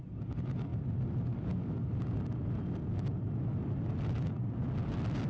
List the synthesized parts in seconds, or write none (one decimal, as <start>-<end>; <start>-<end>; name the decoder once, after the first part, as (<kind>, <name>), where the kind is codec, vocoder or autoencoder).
none